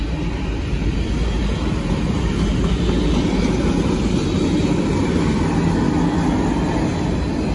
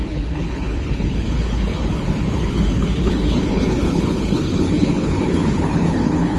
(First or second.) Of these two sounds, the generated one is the second